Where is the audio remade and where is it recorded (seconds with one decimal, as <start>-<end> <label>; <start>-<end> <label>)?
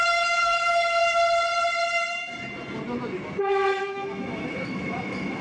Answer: 0.0-1.0 remade; 1.0-3.4 recorded; 3.4-5.4 remade